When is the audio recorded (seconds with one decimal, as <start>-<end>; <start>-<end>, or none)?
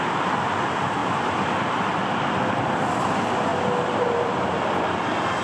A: 0.0-5.4